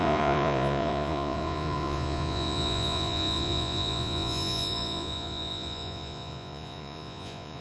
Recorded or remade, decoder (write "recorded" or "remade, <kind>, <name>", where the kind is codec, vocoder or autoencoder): remade, vocoder, Vocos